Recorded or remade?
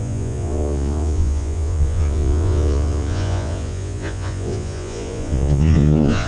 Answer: remade